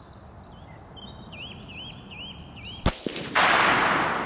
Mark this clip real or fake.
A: real